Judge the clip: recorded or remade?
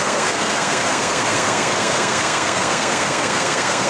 remade